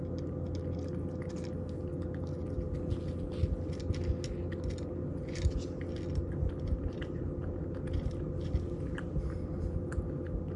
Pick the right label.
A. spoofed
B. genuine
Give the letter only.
B